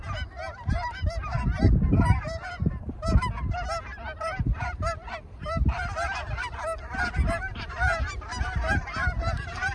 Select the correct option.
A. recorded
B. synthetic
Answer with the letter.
B